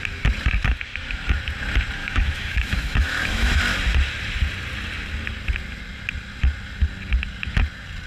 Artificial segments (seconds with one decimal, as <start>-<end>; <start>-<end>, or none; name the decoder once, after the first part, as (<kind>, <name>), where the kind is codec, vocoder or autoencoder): 0.6-1.2 (autoencoder, DAC-VAE); 2.0-3.6